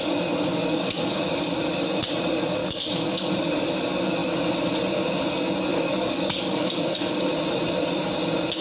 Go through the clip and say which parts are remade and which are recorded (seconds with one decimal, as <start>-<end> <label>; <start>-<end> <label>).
0.0-0.5 recorded; 0.5-1.2 remade; 1.2-2.6 recorded; 2.6-3.3 remade; 3.3-5.7 recorded; 5.7-7.2 remade; 7.2-8.6 recorded